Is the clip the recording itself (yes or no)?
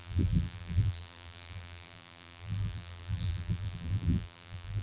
no